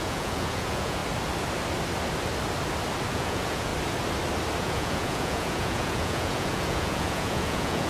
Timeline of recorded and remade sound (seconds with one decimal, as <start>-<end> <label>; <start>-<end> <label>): 0.0-1.0 remade; 1.0-3.1 recorded; 3.1-3.7 remade; 3.7-4.6 recorded; 4.6-7.9 remade